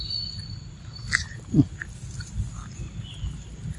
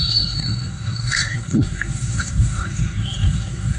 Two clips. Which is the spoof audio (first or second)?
second